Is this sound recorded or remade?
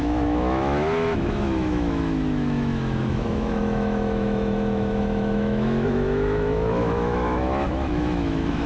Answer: remade